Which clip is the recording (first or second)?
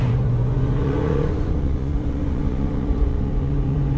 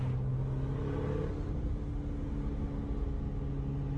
second